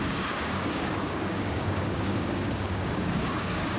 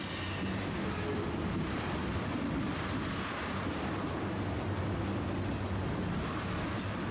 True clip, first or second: second